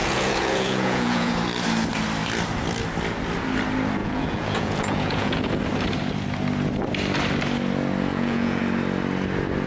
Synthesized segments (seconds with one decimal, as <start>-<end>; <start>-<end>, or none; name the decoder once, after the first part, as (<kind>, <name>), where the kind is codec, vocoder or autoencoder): 0.0-1.3 (vocoder, Vocos); 4.0-5.5; 8.1-8.6